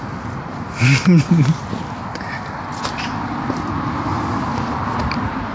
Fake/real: real